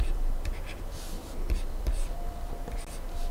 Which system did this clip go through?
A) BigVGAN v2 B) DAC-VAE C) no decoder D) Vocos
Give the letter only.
A